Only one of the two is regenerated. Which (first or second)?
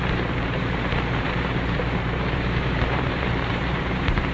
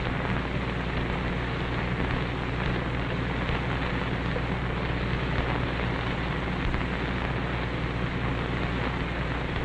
first